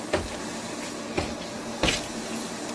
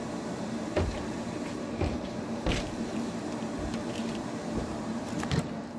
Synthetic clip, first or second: second